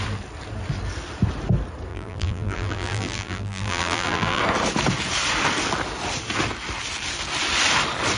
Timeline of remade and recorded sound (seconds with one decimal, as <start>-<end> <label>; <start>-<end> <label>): 0.0-1.9 recorded; 1.9-4.4 remade; 4.4-8.2 recorded